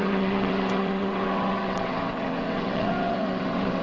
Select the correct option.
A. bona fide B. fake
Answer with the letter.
B